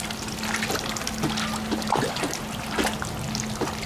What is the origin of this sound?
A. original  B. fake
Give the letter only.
A